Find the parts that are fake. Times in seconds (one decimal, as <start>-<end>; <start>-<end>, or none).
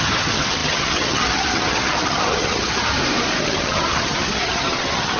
0.0-2.9; 3.4-5.2